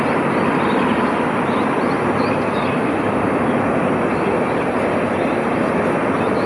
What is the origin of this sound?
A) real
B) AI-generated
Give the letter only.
A